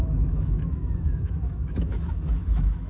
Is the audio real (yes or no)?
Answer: no